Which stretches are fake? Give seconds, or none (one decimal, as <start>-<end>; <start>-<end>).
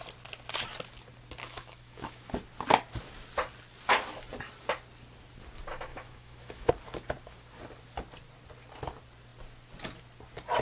1.4-2.3; 5.9-6.7